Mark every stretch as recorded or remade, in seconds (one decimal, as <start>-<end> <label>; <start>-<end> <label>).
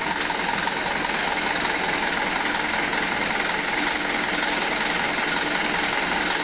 0.0-6.4 recorded